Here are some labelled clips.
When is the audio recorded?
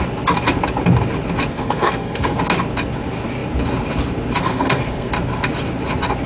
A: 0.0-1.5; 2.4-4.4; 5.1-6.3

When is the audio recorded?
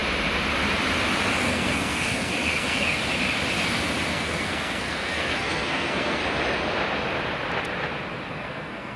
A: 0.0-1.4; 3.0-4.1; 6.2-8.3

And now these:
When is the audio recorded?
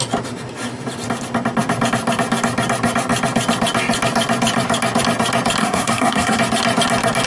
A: 0.0-5.6; 6.4-7.3